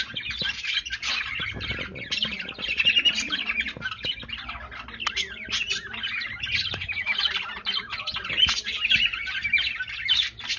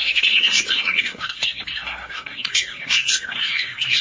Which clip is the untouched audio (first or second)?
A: first